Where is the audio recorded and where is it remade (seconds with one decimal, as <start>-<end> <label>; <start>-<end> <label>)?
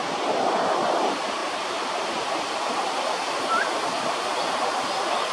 0.0-5.3 recorded